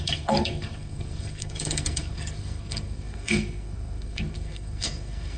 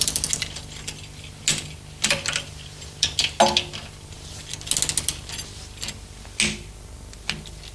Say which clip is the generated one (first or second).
first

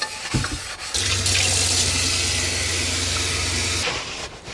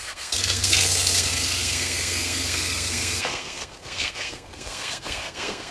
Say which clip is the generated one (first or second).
second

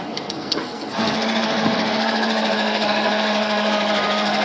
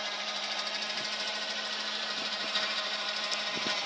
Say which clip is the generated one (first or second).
first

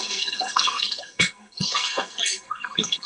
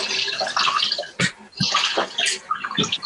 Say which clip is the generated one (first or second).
first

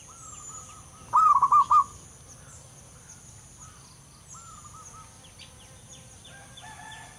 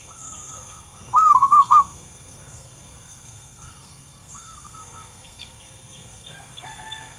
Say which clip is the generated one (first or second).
second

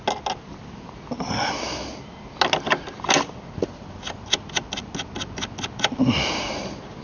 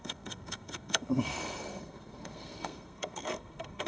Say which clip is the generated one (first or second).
second